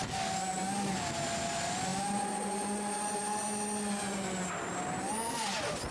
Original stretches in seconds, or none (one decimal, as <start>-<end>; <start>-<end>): 0.0-5.9